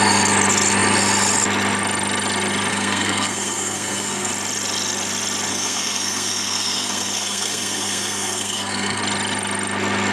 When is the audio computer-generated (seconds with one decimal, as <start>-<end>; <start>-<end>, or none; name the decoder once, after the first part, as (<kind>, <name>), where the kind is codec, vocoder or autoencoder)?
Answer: 2.7-4.3 (codec, SNAC); 5.5-9.0